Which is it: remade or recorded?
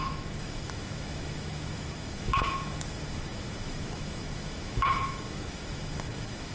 remade